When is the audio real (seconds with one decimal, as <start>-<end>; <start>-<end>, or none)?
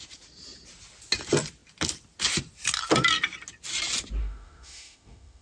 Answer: 0.0-4.2